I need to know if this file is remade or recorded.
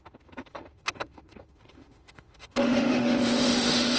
remade